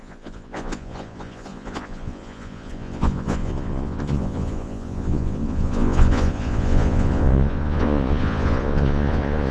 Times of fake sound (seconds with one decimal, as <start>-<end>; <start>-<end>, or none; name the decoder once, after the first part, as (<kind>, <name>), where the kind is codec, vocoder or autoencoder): 0.0-9.5 (vocoder, Vocos)